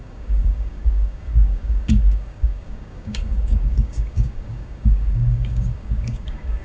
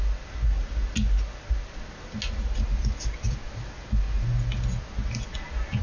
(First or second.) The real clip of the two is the second